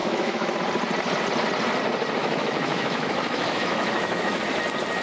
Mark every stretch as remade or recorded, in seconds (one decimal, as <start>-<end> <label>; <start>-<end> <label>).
0.0-0.6 remade; 0.6-2.2 recorded; 2.2-4.4 remade; 4.4-5.0 recorded